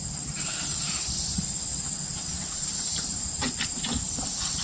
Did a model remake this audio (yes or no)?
no